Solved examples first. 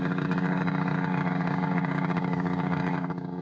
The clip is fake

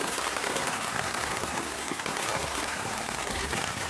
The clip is fake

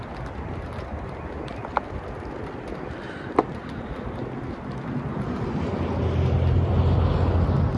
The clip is real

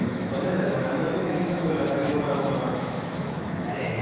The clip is fake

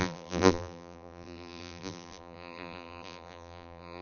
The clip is fake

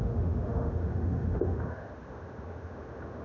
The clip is fake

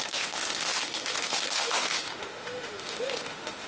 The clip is fake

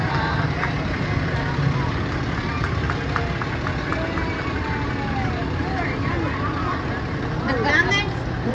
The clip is real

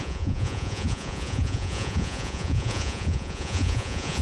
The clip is fake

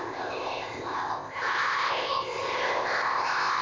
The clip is fake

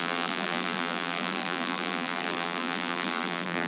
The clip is fake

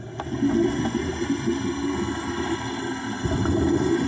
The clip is real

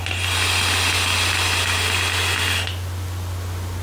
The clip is real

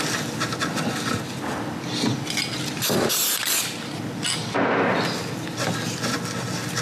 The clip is real